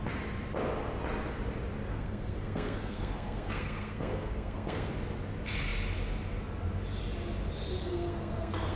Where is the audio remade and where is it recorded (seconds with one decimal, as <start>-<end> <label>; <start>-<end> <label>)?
0.0-1.9 recorded; 1.9-4.9 remade; 4.9-7.8 recorded; 7.8-8.8 remade